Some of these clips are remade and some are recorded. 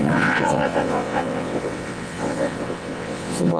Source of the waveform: remade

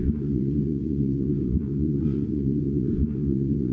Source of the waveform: remade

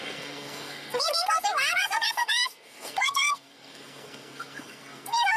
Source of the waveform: remade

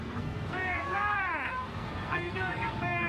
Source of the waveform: remade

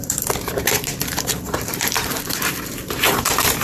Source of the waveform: remade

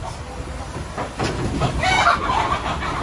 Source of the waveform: recorded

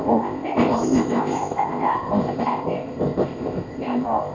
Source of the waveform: remade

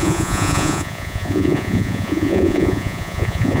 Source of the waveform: remade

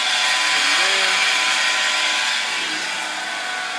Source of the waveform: recorded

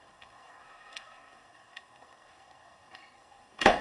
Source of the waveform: remade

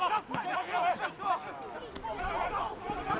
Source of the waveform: recorded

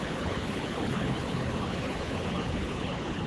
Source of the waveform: remade